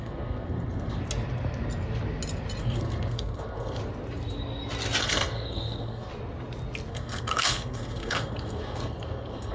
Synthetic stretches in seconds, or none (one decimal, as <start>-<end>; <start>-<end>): 0.0-1.0; 2.6-3.8; 5.0-6.1; 6.9-9.5

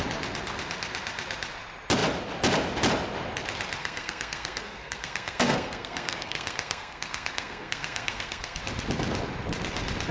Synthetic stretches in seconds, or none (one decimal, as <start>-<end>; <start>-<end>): 3.8-8.6

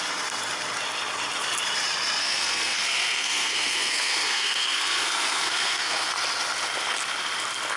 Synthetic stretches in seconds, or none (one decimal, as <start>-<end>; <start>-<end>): 2.2-6.1

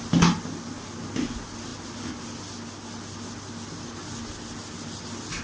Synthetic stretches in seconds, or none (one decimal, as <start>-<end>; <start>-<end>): none